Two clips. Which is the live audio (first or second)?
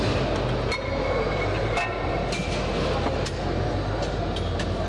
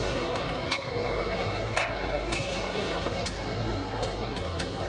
first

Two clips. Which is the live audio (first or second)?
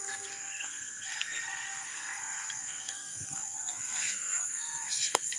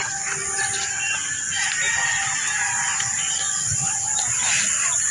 second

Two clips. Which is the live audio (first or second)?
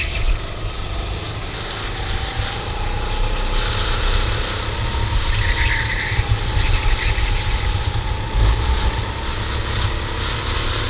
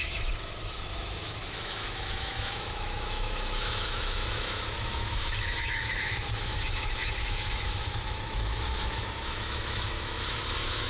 first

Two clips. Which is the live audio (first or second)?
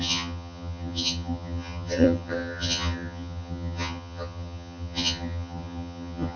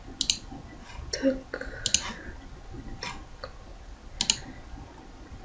second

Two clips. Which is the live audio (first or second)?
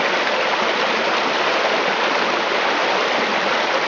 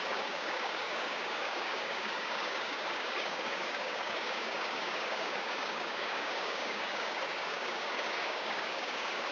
first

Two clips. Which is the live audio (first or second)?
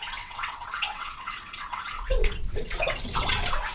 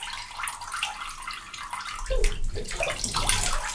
second